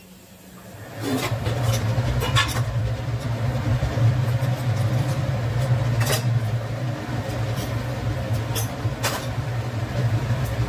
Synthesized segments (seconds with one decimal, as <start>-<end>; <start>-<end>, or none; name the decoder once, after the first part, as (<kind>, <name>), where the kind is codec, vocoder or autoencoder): 1.3-5.3 (vocoder, BigVGAN v2); 9.2-10.7